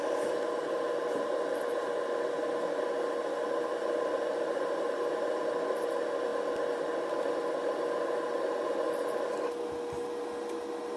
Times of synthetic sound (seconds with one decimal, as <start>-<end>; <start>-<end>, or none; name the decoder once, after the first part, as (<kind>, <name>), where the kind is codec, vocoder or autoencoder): 1.8-5.2 (vocoder, BigVGAN v2); 6.3-9.3